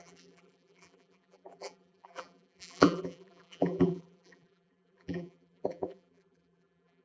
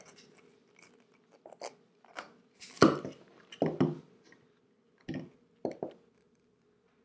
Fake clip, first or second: first